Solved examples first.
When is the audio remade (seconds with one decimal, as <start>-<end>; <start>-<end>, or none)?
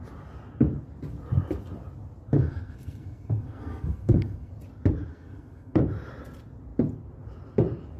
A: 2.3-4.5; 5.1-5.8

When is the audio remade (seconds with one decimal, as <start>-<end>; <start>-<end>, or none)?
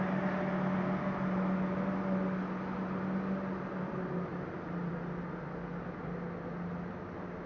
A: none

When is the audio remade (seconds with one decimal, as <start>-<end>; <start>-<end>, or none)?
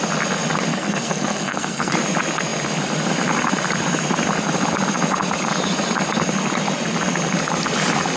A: 0.7-1.9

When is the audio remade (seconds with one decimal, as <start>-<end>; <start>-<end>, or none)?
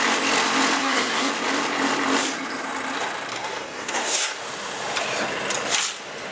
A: 0.8-1.3; 3.3-4.4